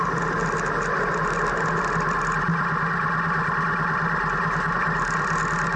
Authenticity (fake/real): real